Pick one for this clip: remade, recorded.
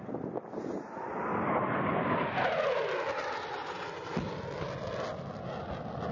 recorded